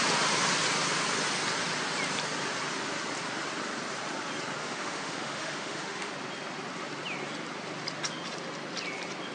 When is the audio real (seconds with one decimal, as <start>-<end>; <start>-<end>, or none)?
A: 0.0-4.6; 6.1-9.3